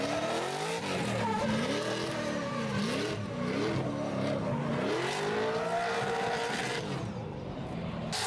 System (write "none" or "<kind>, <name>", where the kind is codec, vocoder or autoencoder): none